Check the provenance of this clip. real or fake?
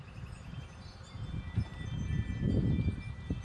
fake